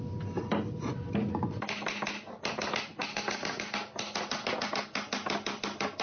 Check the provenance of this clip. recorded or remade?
recorded